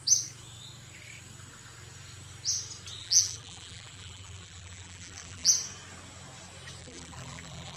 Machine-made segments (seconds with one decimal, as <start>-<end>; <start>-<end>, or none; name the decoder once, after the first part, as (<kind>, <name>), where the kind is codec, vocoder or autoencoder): 3.0-5.5 (vocoder, BigVGAN v2); 6.8-7.8